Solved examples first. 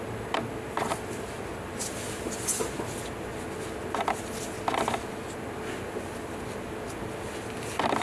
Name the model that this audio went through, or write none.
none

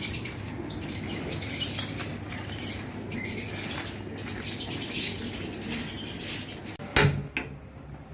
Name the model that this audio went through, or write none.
none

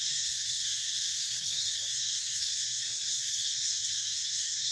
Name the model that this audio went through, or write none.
codec, SNAC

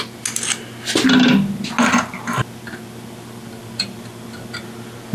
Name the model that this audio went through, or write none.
none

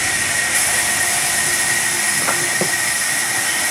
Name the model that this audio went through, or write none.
none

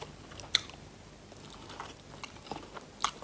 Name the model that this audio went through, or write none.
none